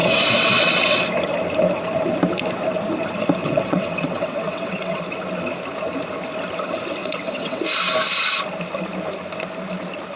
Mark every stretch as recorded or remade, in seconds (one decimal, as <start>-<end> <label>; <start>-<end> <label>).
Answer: 0.0-1.0 remade; 1.0-3.4 recorded; 3.4-5.0 remade; 5.0-7.0 recorded; 7.0-7.6 remade; 7.6-10.2 recorded